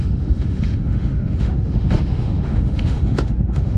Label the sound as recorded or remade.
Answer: remade